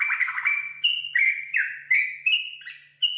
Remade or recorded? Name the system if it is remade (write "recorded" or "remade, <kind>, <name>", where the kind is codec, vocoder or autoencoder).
recorded